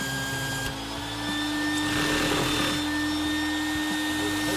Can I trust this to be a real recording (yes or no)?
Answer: yes